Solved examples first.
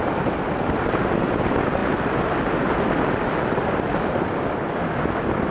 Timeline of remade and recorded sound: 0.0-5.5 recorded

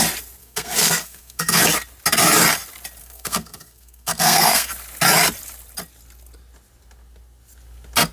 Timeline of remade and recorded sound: 0.0-0.4 recorded; 0.4-1.6 remade; 1.6-3.0 recorded; 3.0-4.7 remade; 4.7-8.1 recorded

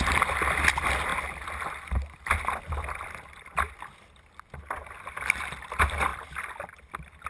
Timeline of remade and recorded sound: 0.0-7.3 recorded

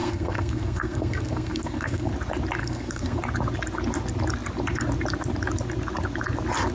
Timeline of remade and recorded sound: 0.0-2.1 remade; 2.1-2.6 recorded; 2.6-3.2 remade; 3.2-6.7 recorded

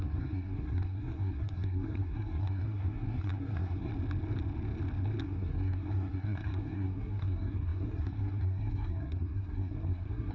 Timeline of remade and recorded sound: 0.0-3.9 remade; 3.9-5.2 recorded; 5.2-10.3 remade

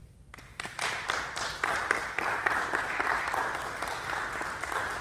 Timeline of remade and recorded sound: 0.0-5.0 recorded